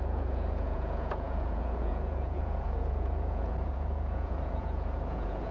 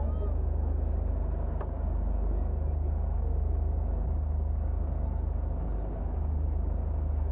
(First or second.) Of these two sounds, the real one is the second